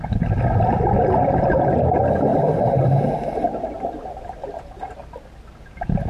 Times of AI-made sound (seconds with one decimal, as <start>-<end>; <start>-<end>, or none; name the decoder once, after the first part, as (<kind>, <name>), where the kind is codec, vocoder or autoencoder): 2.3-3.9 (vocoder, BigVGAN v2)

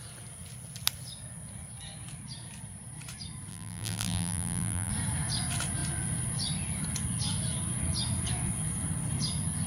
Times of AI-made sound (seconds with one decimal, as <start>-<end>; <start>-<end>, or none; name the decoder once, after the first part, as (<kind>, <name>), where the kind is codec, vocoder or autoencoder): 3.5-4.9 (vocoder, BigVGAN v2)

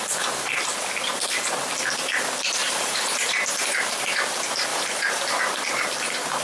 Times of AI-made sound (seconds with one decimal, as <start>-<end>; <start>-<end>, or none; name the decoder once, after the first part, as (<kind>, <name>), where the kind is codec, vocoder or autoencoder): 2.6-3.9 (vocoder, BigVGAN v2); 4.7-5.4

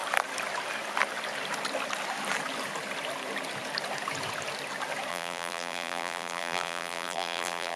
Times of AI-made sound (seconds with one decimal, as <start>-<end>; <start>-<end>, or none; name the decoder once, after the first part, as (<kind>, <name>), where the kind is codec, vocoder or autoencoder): 5.1-7.8 (vocoder, BigVGAN v2)

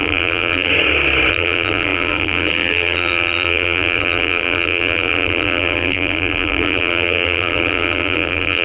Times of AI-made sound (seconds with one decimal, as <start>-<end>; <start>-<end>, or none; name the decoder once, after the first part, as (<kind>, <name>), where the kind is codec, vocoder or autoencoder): 0.0-0.7 (vocoder, BigVGAN v2); 1.3-8.6

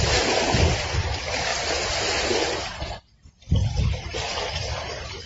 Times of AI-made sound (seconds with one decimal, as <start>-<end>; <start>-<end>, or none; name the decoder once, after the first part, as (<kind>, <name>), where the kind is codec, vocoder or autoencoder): 0.0-1.5 (vocoder, BigVGAN v2); 4.5-5.3

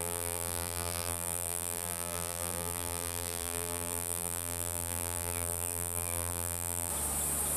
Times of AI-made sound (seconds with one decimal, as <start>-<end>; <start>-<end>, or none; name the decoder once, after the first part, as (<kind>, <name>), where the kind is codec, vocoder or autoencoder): 0.0-6.9 (vocoder, BigVGAN v2)